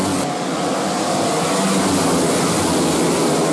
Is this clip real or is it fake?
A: real